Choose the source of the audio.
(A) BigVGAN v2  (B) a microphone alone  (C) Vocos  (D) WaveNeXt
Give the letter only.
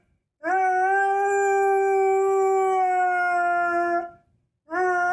B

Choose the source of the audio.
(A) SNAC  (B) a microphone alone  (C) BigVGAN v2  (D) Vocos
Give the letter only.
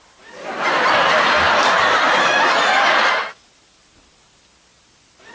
B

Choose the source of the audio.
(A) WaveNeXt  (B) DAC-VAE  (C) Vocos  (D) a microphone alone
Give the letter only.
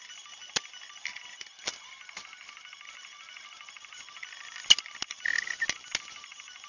D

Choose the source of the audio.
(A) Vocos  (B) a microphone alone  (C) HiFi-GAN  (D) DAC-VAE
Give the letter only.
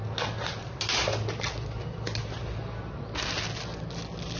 B